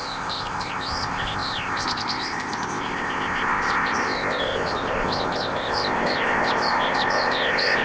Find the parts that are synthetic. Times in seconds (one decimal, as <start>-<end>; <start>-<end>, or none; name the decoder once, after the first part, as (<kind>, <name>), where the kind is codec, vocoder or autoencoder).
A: 0.0-7.8 (codec, ZipCodec)